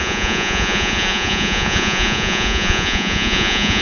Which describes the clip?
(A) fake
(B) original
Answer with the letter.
A